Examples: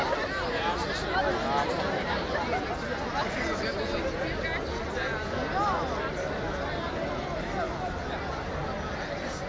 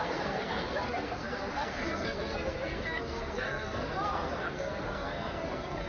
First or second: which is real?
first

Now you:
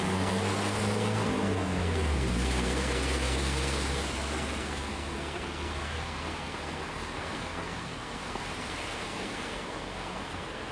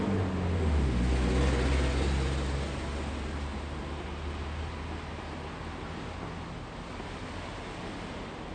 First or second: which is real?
second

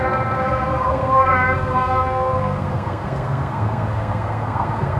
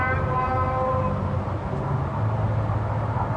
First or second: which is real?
second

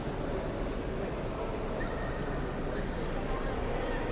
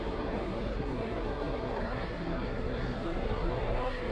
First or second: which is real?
first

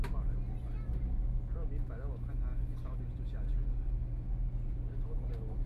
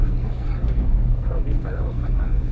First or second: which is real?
first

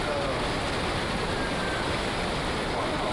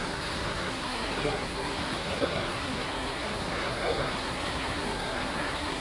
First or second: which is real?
first